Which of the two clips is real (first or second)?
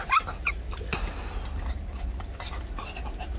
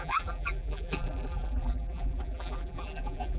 first